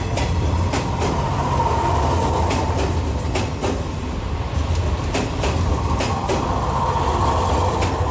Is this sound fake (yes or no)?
no